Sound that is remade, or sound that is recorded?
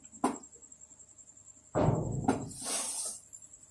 recorded